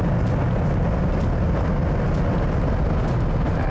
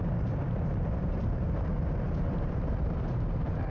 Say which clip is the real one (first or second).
first